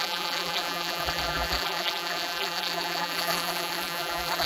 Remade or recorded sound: remade